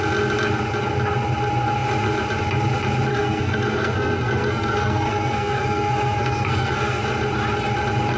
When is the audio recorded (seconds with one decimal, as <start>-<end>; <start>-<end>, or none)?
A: 0.0-3.1; 7.0-8.2